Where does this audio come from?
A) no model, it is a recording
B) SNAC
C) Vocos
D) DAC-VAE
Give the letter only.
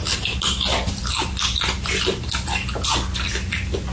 A